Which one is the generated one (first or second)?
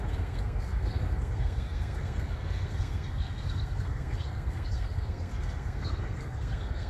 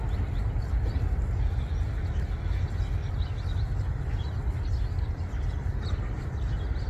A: first